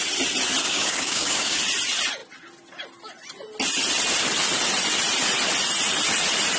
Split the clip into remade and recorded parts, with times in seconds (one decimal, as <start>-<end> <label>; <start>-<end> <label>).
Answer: 0.0-0.6 recorded; 0.6-1.6 remade; 1.6-6.6 recorded